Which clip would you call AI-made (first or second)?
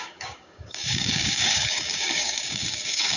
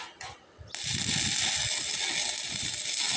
first